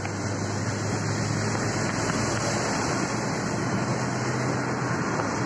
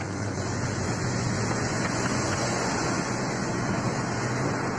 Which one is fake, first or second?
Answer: second